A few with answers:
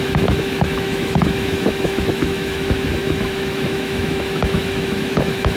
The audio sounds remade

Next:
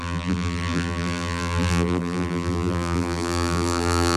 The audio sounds remade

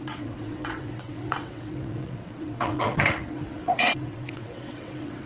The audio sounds remade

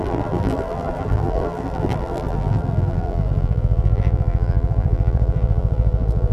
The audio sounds remade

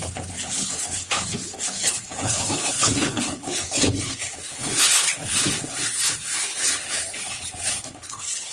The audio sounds remade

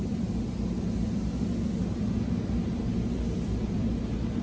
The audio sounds recorded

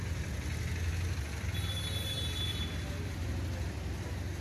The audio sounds recorded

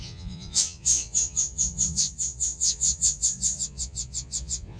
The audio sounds remade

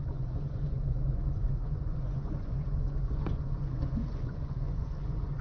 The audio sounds remade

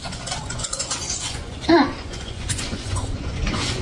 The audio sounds remade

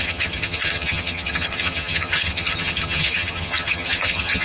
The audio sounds remade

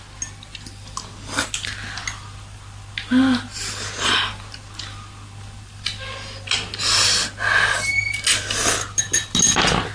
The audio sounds recorded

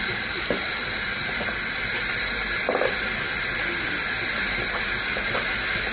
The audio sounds recorded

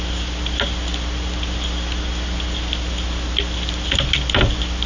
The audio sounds recorded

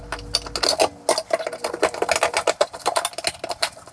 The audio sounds recorded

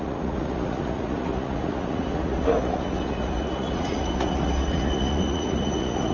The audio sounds remade